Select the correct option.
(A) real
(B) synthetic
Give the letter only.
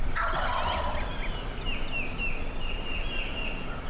A